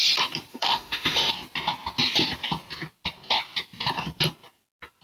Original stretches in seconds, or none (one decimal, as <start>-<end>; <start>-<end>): 0.0-0.5; 1.3-5.0